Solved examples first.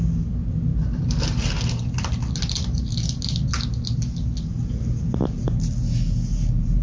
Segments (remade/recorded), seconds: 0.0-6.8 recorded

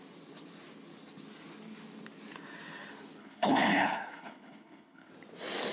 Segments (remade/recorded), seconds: 0.0-3.2 recorded; 3.2-5.1 remade; 5.1-5.7 recorded

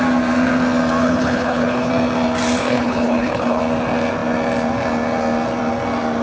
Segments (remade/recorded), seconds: 0.0-1.0 recorded; 1.0-1.9 remade; 1.9-2.6 recorded; 2.6-3.6 remade; 3.6-6.2 recorded

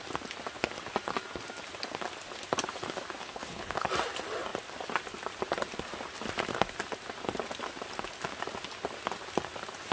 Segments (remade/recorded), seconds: 0.0-3.2 recorded; 3.2-3.9 remade; 3.9-9.9 recorded

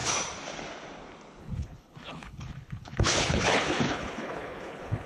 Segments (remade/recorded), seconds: 0.0-1.4 recorded; 1.4-5.1 remade